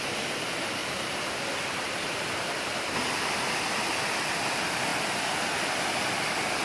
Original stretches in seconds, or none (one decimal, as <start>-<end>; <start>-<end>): 0.0-0.8; 2.1-4.9; 5.8-6.6